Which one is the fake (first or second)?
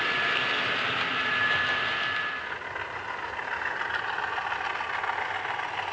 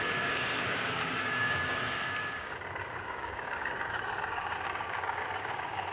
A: second